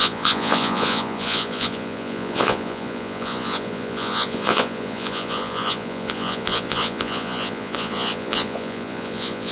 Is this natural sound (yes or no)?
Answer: no